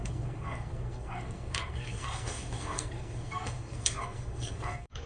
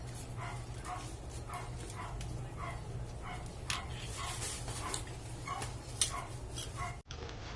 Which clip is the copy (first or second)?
first